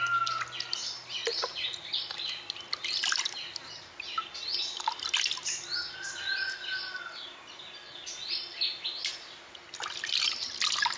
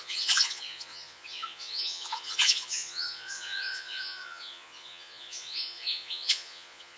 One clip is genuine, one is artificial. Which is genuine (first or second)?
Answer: first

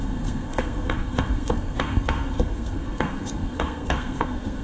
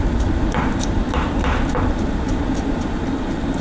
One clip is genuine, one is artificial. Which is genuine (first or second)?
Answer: second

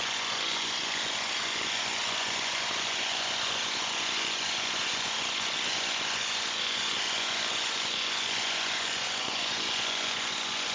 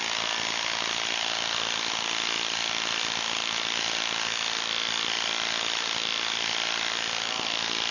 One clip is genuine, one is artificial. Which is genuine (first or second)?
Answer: second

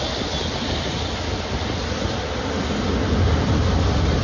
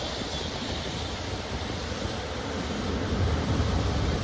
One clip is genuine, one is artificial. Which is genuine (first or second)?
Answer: first